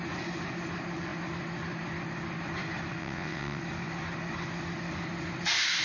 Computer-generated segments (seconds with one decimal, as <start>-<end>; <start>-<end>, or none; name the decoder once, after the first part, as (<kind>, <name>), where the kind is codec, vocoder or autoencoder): 3.0-3.6 (vocoder, WaveNeXt)